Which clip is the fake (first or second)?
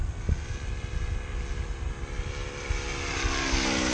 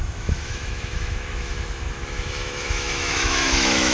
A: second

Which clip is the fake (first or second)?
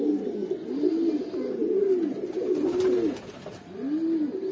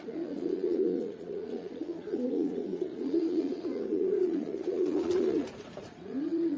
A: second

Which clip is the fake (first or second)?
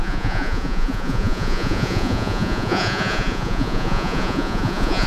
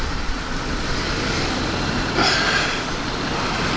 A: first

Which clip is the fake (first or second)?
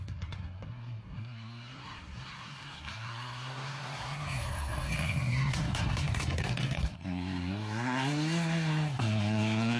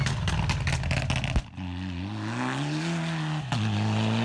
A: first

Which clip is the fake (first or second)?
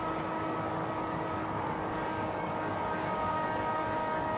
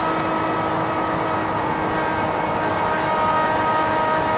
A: first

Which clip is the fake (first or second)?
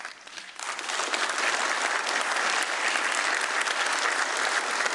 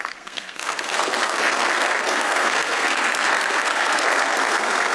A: second